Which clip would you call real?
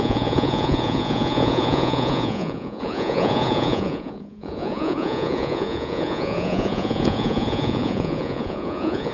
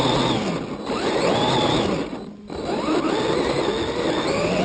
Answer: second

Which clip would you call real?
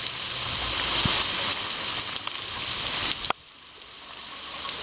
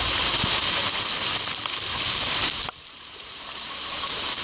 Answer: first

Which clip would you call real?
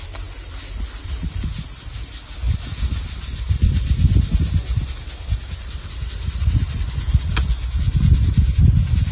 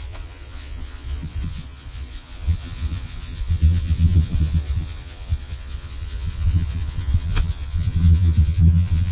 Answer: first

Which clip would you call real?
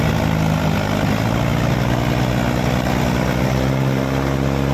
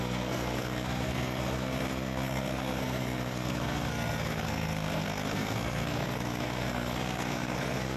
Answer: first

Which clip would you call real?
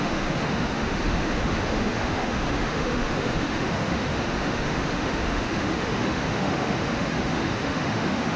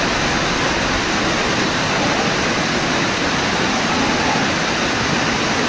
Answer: second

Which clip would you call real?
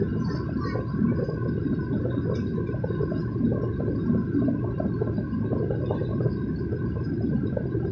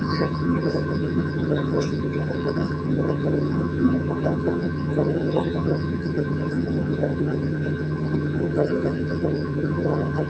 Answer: first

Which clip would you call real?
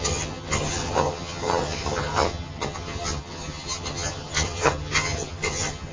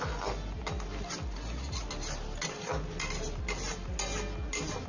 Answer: second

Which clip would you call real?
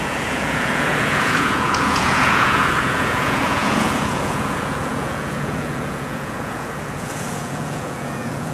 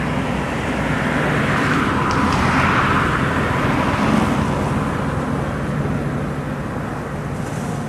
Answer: second